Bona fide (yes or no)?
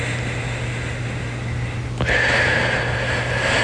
yes